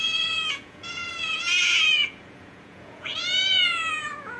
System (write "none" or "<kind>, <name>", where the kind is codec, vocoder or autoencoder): vocoder, Vocos